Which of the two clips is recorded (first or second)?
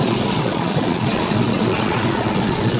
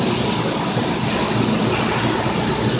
second